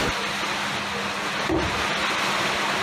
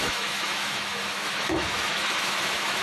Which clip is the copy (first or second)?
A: second